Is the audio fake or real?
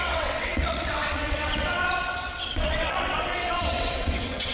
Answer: fake